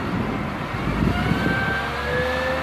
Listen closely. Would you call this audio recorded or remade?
recorded